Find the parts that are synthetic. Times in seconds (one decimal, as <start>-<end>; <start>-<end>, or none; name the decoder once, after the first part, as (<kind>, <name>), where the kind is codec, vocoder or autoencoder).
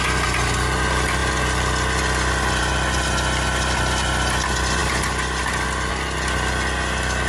none